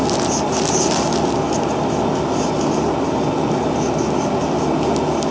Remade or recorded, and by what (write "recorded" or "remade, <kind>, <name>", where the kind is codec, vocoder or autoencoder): recorded